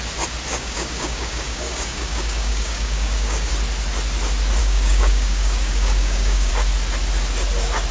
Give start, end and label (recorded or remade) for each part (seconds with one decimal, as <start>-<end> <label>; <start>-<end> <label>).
0.0-0.5 recorded; 0.5-3.5 remade; 3.5-4.6 recorded; 4.6-6.5 remade; 6.5-7.9 recorded